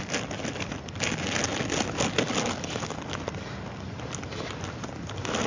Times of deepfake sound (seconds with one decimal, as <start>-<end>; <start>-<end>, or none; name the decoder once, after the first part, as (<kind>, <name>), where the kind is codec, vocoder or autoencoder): none